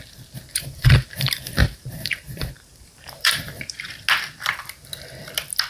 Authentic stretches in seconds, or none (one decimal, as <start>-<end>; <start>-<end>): 0.0-0.5; 3.9-5.7